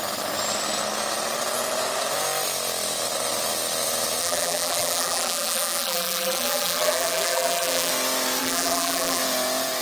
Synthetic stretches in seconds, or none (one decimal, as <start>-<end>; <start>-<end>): 4.2-7.9; 8.4-9.2